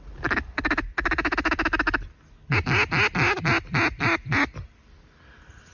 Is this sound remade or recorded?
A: recorded